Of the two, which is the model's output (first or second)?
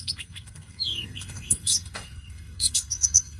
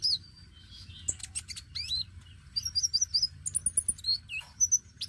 first